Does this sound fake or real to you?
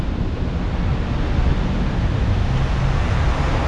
real